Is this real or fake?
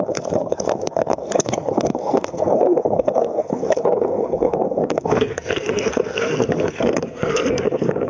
fake